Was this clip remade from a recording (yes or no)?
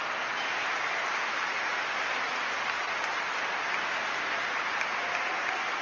no